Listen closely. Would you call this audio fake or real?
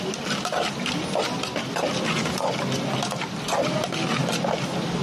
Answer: real